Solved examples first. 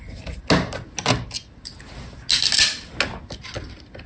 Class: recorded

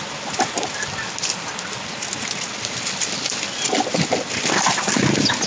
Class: recorded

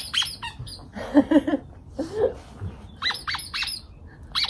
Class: recorded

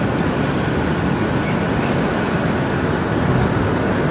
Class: recorded